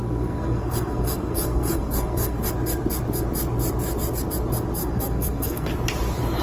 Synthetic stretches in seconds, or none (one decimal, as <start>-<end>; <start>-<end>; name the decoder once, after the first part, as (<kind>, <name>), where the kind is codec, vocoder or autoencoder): 0.0-2.5 (codec, SNAC); 4.8-5.7